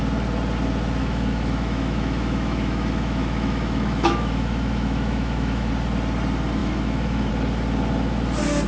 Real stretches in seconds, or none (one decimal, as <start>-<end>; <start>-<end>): 0.0-1.0; 5.7-6.6; 7.3-8.7